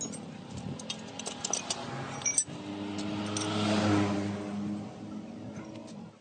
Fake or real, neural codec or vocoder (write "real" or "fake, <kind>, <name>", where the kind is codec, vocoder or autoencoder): real